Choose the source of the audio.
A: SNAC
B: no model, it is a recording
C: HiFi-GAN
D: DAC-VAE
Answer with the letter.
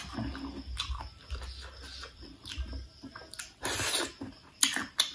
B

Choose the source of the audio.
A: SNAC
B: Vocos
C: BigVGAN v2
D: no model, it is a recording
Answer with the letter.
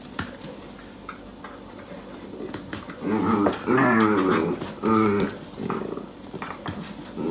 D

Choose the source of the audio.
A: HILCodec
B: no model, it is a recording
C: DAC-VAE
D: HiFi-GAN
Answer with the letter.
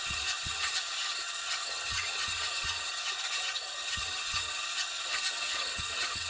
D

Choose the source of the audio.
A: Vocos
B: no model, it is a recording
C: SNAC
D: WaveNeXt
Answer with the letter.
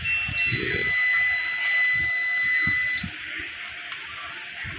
B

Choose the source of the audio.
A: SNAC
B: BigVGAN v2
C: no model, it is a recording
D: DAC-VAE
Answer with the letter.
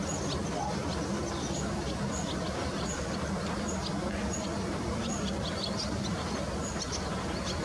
C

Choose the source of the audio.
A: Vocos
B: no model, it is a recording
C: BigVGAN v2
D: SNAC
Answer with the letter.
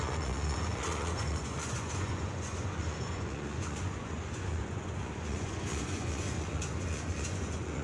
A